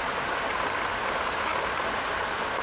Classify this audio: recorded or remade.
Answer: recorded